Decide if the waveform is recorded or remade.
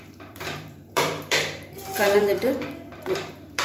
remade